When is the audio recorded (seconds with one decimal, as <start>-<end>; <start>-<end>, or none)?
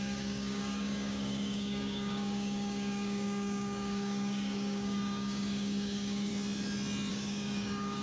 6.3-7.1